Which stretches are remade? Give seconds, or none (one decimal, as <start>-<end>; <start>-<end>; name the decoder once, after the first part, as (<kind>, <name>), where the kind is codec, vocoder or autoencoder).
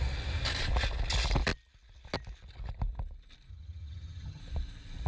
3.5-4.4 (vocoder, HiFi-GAN)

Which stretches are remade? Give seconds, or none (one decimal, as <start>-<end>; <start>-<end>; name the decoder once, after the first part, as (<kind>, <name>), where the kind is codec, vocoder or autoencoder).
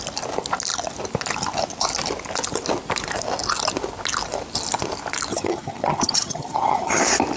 5.3-7.0 (vocoder, HiFi-GAN)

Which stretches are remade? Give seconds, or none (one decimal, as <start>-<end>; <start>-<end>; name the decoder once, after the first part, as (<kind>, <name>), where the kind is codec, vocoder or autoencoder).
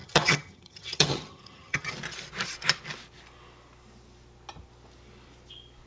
0.0-1.9 (vocoder, HiFi-GAN)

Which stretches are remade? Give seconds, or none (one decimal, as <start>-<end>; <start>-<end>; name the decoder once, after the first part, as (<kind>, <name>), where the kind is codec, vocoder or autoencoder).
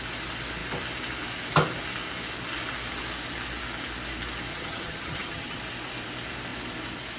4.5-5.6 (vocoder, HiFi-GAN)